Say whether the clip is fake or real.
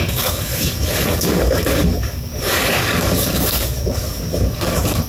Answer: fake